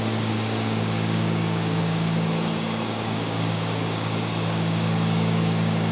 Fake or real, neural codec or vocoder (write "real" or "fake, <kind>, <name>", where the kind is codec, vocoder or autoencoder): fake, codec, DAC